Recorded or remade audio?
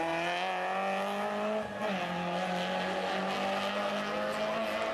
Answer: recorded